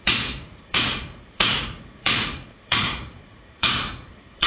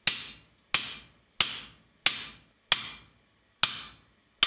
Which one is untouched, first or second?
second